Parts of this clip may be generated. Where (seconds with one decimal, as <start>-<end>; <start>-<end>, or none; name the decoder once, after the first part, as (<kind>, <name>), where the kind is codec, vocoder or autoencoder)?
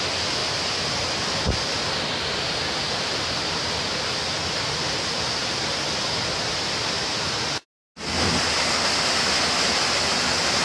none